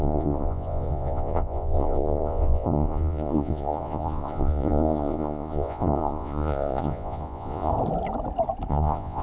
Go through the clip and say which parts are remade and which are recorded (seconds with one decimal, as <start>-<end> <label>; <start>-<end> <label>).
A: 0.0-7.7 remade; 7.7-8.7 recorded; 8.7-9.2 remade